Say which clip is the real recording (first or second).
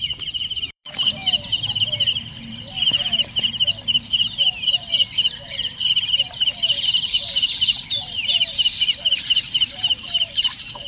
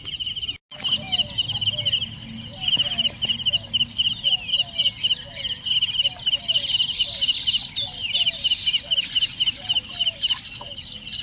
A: second